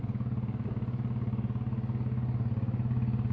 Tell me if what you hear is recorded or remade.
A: recorded